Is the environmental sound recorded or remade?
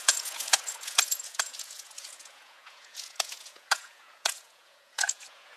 remade